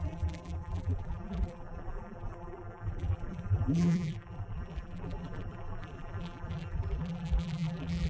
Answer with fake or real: fake